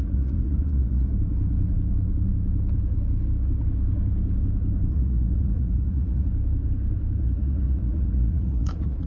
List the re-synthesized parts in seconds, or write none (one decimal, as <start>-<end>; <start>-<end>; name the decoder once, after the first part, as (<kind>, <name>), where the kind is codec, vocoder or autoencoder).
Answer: 0.0-1.1 (vocoder, Vocos); 4.9-6.3; 7.2-9.1